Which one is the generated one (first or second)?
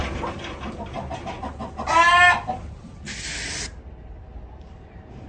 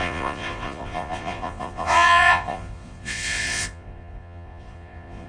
second